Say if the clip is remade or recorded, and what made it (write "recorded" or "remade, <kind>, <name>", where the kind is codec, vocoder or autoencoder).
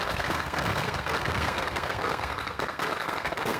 remade, codec, SNAC